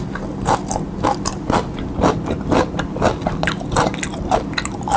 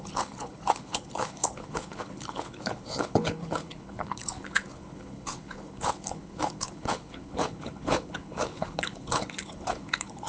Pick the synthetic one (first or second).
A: second